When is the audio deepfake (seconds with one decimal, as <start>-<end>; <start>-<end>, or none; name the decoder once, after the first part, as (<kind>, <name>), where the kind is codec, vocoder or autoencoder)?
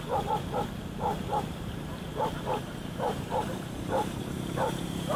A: 0.0-5.2 (vocoder, BigVGAN v2)